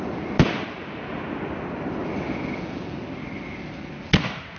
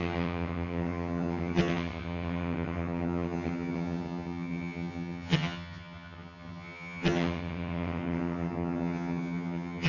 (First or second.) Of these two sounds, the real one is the first